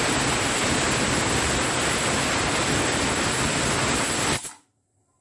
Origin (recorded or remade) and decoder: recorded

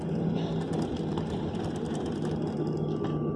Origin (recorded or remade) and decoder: recorded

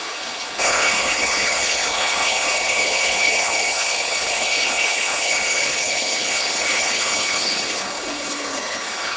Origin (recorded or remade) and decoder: remade, codec, HILCodec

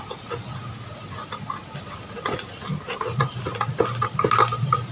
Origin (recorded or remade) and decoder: recorded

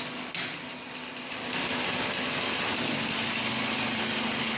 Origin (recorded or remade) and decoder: recorded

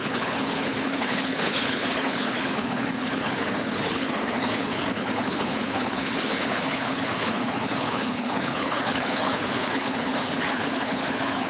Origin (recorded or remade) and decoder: remade, codec, HILCodec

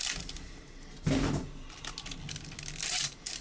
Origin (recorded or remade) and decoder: recorded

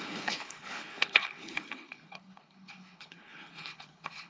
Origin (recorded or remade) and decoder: remade, codec, HILCodec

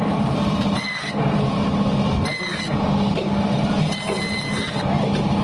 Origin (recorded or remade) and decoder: recorded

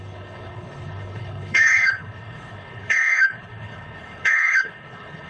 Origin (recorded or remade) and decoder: remade, codec, HILCodec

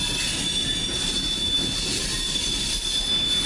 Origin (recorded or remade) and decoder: recorded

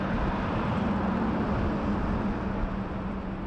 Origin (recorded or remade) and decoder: recorded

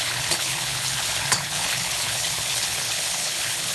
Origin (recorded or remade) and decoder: remade, codec, HILCodec